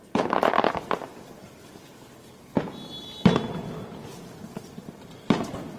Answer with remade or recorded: recorded